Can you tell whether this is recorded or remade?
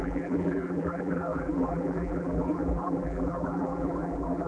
remade